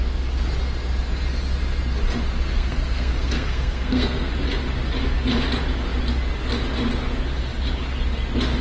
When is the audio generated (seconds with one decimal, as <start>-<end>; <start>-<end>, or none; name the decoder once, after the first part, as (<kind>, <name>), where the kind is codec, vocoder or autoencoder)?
2.5-4.3 (codec, SNAC)

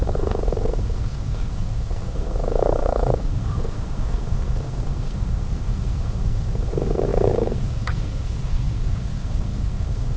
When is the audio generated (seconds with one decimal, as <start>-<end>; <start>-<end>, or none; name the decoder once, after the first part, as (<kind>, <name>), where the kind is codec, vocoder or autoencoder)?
0.0-10.2 (codec, SNAC)

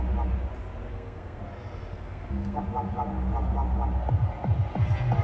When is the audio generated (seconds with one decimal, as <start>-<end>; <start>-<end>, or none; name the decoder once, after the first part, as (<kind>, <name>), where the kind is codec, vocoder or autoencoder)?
0.9-1.4 (codec, SNAC); 1.9-2.6

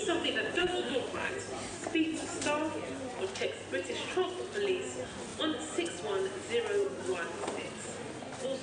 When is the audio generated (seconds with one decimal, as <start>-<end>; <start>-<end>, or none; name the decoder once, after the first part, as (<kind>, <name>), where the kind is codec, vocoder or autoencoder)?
0.6-1.3 (codec, SNAC)

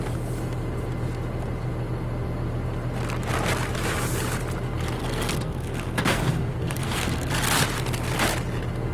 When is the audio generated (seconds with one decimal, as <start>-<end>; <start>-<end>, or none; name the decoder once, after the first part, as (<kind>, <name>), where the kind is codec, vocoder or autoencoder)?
5.0-7.3 (codec, SNAC)

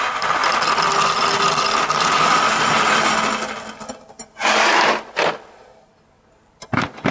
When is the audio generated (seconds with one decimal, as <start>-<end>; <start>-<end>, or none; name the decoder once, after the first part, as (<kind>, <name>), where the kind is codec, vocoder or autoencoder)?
none

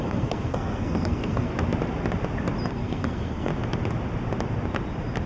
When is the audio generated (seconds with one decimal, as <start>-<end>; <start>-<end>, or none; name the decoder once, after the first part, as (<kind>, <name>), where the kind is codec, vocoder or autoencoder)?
0.0-1.5 (codec, SNAC); 2.7-3.5